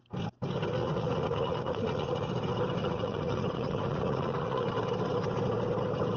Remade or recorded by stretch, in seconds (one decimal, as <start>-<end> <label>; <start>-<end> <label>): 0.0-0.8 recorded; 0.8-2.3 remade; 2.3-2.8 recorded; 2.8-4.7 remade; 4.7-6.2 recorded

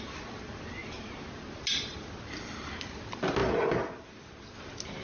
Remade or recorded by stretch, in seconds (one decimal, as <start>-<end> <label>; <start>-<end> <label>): 0.0-5.0 recorded

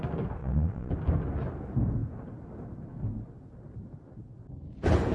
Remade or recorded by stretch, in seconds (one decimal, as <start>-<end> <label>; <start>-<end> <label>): 0.0-0.4 recorded; 0.4-0.9 remade; 0.9-5.1 recorded

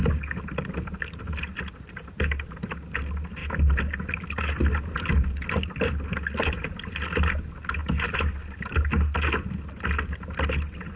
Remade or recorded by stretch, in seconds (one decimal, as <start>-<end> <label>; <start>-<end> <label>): 0.0-11.0 recorded